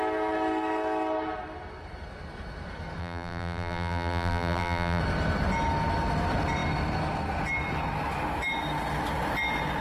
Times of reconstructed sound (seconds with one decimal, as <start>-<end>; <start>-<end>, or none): 3.0-5.0